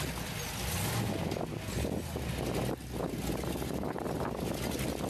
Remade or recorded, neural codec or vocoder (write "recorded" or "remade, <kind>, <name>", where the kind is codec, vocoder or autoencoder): recorded